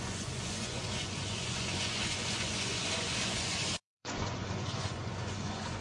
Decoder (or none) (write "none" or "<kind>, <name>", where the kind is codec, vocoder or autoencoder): vocoder, Vocos